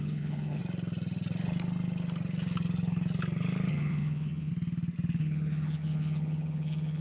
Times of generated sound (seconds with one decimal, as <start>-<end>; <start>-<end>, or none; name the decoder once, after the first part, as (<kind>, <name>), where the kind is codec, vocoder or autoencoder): 0.0-0.6 (vocoder, HiFi-GAN); 3.7-4.5; 5.2-7.0